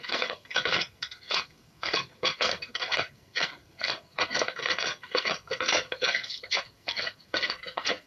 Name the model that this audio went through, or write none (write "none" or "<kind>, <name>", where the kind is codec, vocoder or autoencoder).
codec, SNAC